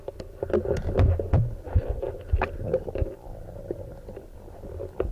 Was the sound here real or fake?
fake